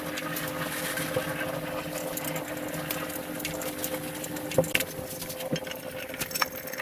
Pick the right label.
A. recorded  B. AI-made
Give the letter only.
A